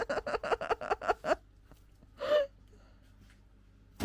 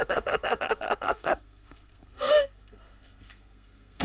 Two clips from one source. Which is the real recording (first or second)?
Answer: first